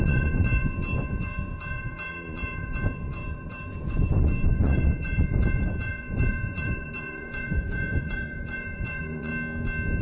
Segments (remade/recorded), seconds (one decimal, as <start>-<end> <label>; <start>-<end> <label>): 0.0-9.3 remade; 9.3-10.0 recorded